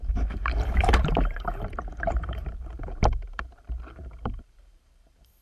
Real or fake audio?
fake